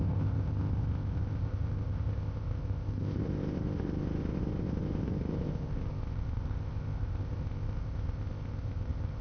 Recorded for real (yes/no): no